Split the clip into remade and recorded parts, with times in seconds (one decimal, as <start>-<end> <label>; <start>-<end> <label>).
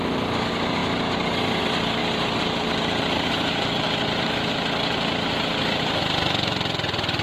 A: 0.0-2.0 recorded; 2.0-6.0 remade; 6.0-7.2 recorded